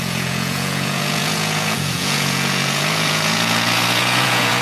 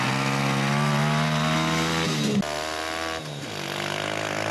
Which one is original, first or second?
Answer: second